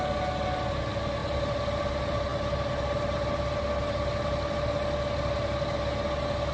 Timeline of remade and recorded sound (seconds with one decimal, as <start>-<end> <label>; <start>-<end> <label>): 0.0-6.5 recorded